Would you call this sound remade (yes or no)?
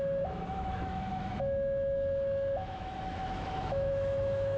yes